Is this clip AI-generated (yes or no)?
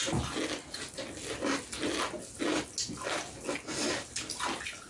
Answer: no